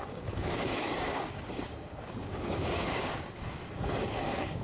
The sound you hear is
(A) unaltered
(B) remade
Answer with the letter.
B